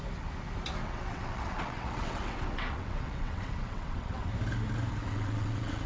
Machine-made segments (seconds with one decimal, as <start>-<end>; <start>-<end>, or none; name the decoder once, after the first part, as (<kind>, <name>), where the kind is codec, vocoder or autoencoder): 0.8-4.3 (vocoder, WaveNeXt); 5.0-5.9